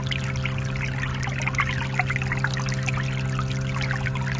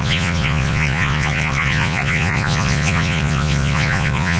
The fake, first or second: second